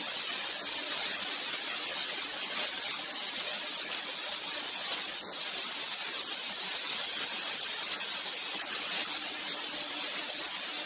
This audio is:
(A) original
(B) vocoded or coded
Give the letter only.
A